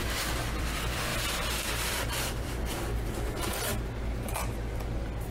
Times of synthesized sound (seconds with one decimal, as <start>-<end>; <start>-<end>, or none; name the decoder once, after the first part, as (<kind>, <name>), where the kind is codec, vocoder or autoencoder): 0.0-1.1 (vocoder, BigVGAN v2); 1.6-3.7